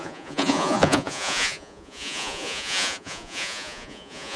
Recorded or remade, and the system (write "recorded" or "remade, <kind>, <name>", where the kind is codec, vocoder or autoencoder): remade, vocoder, Vocos